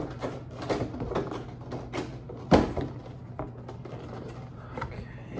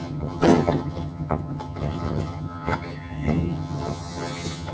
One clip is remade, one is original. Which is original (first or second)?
first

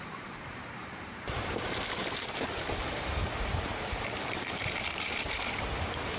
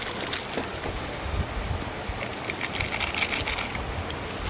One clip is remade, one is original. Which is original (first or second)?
second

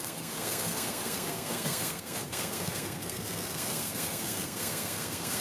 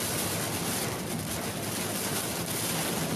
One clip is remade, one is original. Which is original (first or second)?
second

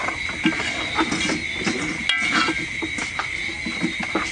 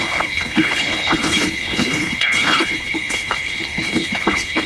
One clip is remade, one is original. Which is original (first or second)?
first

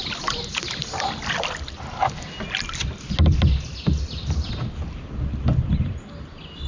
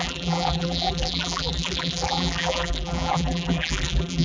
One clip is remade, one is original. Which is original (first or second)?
first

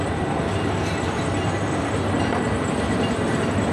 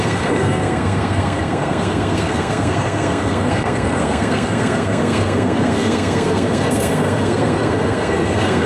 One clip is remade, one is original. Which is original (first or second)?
first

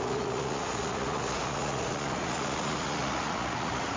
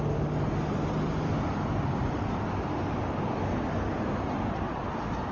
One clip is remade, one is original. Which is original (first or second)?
second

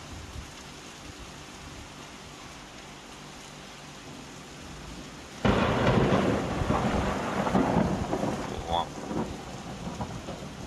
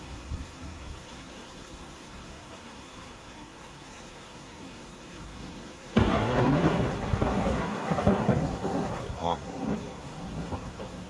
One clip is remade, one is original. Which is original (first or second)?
first